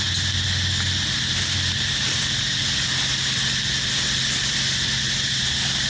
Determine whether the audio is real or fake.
real